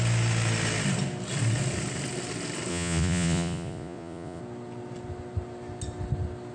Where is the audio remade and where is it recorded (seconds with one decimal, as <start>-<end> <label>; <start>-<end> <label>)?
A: 0.0-2.7 recorded; 2.7-4.4 remade; 4.4-6.5 recorded